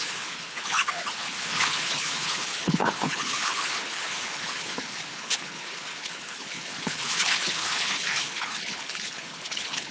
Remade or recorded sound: remade